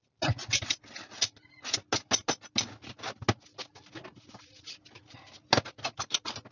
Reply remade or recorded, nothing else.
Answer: recorded